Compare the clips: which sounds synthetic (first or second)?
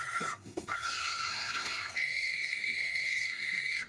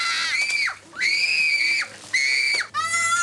first